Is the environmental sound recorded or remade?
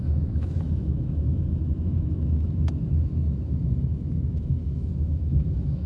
remade